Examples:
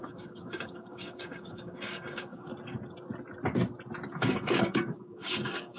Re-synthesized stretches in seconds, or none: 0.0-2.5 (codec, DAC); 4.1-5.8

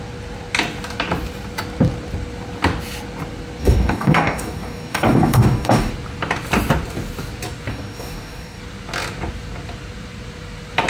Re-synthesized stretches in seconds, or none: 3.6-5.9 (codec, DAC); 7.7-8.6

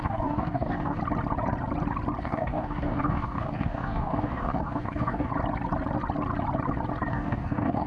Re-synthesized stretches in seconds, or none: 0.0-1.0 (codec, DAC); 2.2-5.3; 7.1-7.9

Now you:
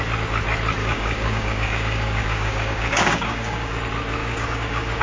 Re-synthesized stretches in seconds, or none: 0.8-3.8 (codec, DAC); 4.2-5.0

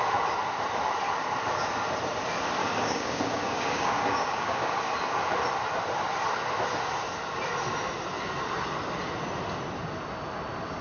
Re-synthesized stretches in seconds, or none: 2.6-4.9 (codec, DAC)

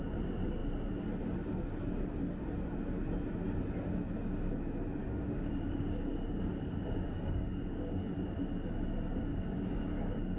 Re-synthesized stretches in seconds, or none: 5.0-8.0 (codec, DAC); 9.3-10.4

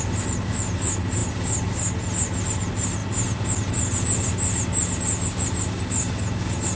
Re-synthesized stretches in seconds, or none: none